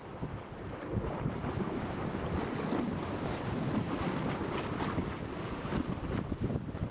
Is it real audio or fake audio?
fake